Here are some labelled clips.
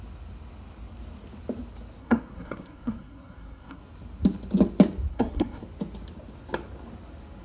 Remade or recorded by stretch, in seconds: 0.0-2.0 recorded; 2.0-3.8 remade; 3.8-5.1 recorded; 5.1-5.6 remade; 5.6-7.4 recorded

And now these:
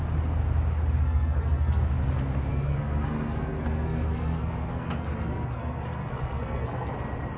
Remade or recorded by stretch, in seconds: 0.0-1.0 recorded; 1.0-1.8 remade; 1.8-2.5 recorded; 2.5-6.9 remade; 6.9-7.4 recorded